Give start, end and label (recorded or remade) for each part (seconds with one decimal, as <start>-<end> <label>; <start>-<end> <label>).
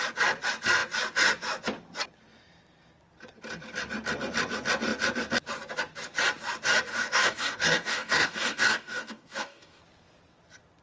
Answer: 0.0-6.9 recorded; 6.9-9.8 remade; 9.8-10.8 recorded